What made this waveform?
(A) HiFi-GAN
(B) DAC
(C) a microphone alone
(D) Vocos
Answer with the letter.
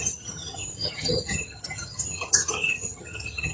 A